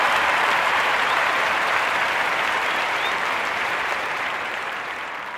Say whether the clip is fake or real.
fake